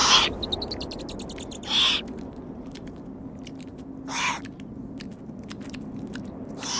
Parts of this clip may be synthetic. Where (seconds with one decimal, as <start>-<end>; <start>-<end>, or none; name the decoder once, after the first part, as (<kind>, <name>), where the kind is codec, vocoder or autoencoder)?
none

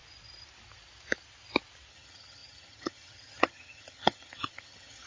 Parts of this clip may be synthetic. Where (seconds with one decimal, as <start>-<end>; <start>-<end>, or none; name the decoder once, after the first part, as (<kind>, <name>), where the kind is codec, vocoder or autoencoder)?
1.9-5.1 (vocoder, HiFi-GAN)

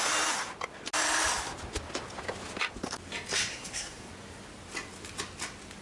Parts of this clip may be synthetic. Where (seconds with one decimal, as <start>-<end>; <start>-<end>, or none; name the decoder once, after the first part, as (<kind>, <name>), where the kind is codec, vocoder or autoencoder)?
3.5-4.1 (codec, SNAC)